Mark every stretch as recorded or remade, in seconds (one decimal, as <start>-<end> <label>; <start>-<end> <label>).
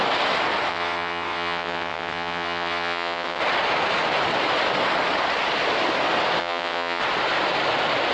0.0-0.7 recorded; 0.7-3.4 remade; 3.4-6.4 recorded; 6.4-7.0 remade; 7.0-8.1 recorded